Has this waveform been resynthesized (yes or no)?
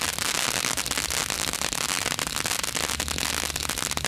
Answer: no